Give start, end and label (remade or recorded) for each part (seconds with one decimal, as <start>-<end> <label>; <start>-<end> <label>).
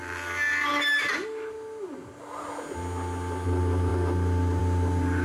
0.0-5.2 recorded